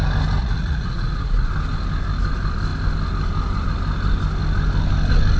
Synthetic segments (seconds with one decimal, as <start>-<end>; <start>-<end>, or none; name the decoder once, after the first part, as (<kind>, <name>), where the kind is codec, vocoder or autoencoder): 0.4-1.5 (vocoder, Vocos)